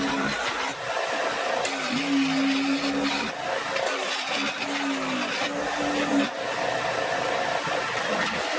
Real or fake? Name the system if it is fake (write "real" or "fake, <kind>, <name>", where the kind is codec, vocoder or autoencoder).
real